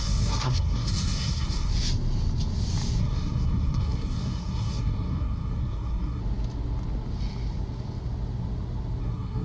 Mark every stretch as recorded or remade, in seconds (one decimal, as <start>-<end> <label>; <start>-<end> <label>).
0.0-1.7 remade; 1.7-3.0 recorded; 3.0-6.2 remade; 6.2-9.0 recorded; 9.0-9.4 remade